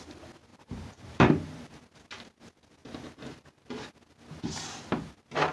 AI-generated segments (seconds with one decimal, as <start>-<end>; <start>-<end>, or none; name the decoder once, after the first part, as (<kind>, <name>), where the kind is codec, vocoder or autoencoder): 0.5-1.8 (vocoder, BigVGAN v2); 2.8-3.6